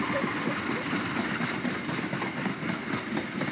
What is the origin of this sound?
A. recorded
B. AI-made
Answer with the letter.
A